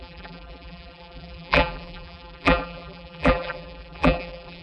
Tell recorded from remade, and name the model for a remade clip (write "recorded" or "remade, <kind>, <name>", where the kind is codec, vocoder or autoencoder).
remade, vocoder, BigVGAN v2